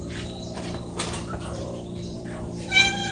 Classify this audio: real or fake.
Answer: fake